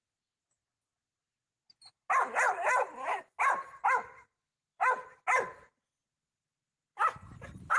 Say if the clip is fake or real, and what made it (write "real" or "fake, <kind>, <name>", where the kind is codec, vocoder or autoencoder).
real